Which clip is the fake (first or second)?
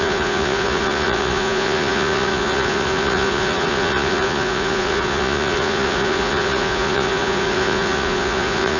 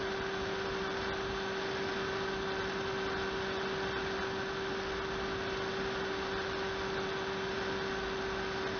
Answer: first